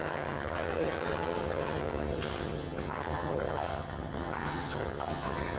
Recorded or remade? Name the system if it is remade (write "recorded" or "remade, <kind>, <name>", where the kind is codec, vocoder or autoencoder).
remade, vocoder, HiFi-GAN